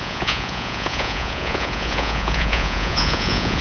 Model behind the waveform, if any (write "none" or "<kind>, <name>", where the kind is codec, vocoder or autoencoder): vocoder, Vocos